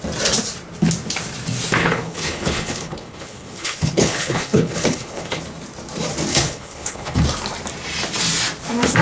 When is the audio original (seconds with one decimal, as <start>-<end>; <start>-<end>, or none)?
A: 0.0-1.8; 5.4-6.3; 7.2-9.0